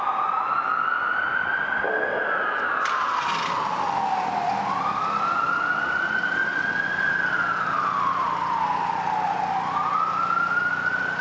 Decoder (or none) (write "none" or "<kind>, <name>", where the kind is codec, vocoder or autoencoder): none